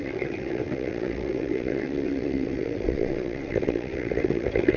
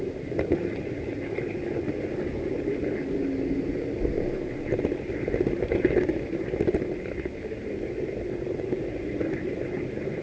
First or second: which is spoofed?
first